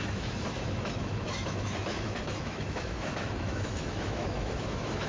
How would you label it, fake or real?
fake